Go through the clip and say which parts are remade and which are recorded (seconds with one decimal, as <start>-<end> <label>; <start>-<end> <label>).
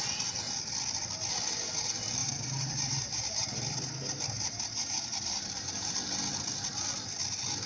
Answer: 0.0-2.2 recorded; 2.2-5.9 remade; 5.9-7.7 recorded